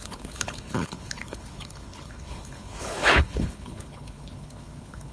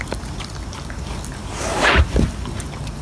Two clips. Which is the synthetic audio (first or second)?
first